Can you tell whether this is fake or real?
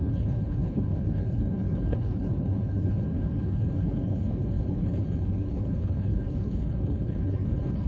fake